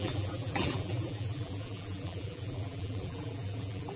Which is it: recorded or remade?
remade